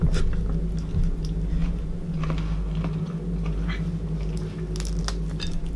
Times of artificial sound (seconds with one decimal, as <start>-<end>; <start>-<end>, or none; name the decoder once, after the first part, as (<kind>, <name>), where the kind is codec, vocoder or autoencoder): none